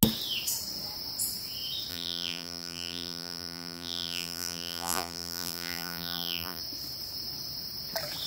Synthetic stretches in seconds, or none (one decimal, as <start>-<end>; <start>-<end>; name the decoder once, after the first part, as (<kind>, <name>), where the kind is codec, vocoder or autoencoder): 1.9-6.6 (vocoder, BigVGAN v2)